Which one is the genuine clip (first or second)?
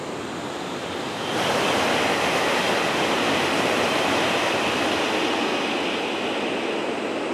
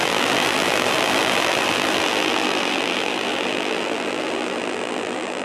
first